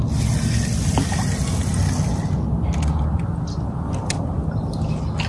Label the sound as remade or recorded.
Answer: recorded